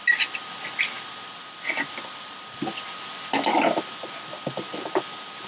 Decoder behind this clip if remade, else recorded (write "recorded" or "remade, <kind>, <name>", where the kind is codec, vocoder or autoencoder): recorded